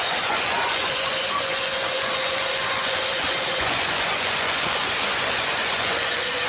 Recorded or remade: remade